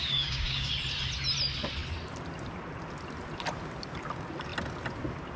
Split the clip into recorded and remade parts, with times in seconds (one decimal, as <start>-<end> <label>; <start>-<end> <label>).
0.0-0.7 remade; 0.7-5.4 recorded